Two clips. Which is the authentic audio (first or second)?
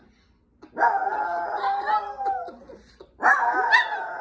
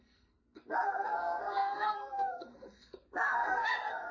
first